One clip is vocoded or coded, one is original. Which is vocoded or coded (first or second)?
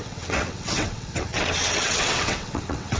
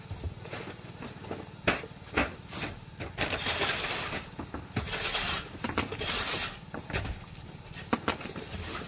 first